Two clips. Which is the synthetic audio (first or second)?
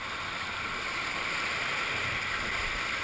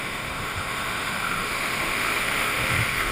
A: second